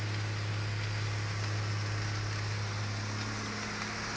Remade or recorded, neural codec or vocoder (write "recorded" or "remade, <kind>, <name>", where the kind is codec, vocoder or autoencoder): recorded